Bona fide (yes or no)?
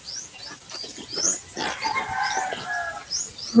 yes